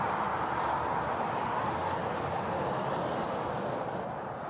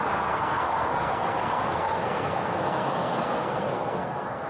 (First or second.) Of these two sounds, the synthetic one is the second